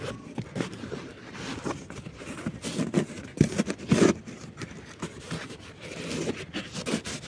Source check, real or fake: real